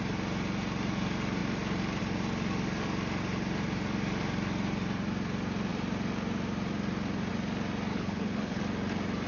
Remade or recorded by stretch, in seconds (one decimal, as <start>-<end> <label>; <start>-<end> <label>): 0.0-7.9 recorded; 7.9-8.6 remade; 8.6-9.3 recorded